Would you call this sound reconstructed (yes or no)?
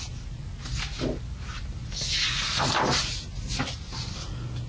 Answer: no